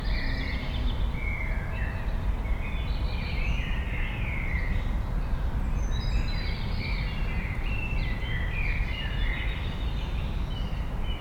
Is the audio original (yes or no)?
yes